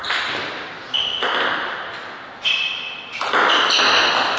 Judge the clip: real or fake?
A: real